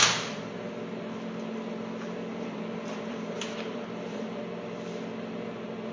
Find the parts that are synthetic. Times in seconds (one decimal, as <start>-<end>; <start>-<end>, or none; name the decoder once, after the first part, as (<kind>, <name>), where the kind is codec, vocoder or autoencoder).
2.3-4.4 (vocoder, BigVGAN v2)